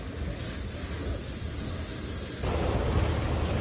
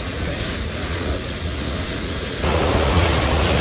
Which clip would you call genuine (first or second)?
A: first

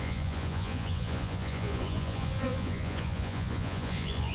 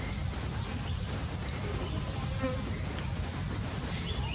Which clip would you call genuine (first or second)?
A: second